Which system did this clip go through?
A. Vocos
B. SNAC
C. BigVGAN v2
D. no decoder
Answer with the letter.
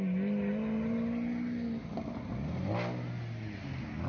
D